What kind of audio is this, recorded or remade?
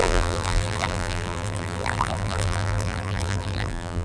remade